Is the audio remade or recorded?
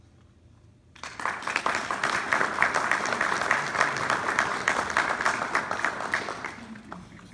recorded